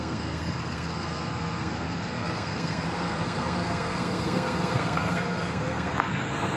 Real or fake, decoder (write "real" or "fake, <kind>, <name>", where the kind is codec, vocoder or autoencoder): fake, codec, SNAC